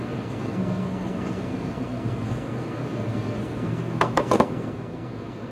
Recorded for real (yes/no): no